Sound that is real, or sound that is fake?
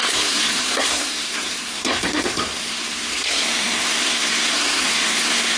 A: fake